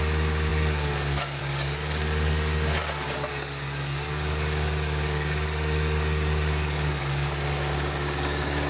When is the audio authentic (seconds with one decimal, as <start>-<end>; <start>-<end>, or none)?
none